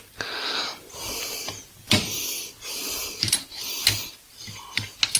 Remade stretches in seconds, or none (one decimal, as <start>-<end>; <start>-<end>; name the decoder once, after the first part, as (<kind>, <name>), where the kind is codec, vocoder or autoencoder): 1.8-3.7 (vocoder, BigVGAN v2)